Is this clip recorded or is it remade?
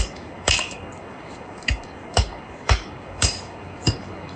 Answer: remade